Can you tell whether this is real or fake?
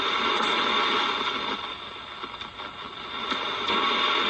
real